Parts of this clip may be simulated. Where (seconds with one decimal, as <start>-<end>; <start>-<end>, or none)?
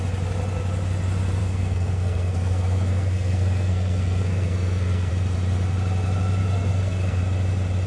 1.4-5.1; 6.4-7.2